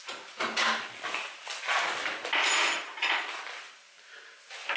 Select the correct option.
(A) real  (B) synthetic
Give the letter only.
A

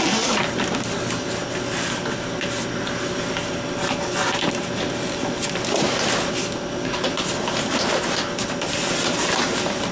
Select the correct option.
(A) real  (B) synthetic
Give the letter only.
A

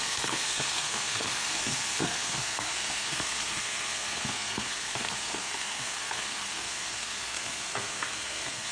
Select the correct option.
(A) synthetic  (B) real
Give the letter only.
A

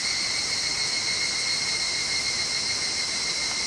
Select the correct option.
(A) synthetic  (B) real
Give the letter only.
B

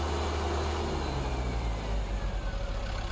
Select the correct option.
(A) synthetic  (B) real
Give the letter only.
B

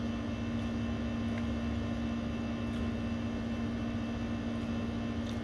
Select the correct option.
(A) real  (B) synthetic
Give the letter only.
A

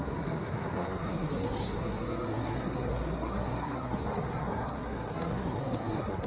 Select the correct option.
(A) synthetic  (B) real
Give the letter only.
A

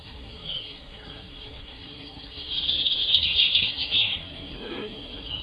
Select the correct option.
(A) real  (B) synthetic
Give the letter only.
B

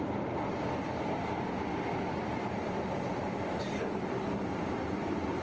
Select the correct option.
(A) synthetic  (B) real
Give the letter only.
B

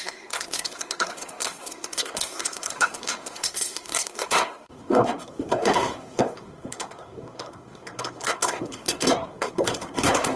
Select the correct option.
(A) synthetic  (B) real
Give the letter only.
A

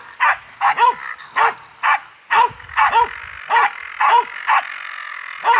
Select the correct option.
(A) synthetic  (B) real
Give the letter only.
B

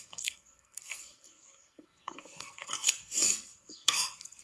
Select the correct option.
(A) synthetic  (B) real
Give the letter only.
A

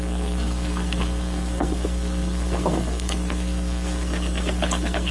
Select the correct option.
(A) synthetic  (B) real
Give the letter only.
A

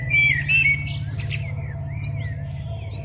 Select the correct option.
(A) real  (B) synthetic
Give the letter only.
A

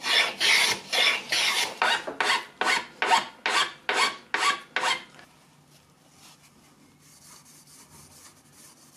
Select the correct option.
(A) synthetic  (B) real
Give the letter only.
B